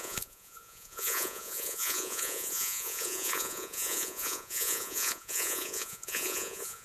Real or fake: fake